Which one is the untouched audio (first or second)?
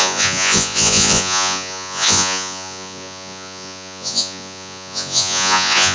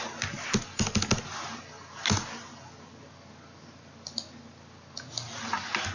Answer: second